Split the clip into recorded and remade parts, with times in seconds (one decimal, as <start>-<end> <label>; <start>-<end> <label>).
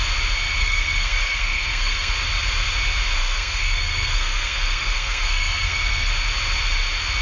0.0-0.6 recorded; 0.6-2.1 remade; 2.1-3.2 recorded; 3.2-6.1 remade; 6.1-7.2 recorded